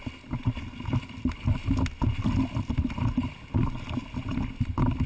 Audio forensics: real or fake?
real